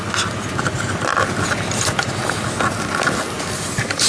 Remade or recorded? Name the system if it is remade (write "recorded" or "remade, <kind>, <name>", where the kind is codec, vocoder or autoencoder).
recorded